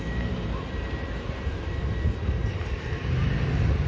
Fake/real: fake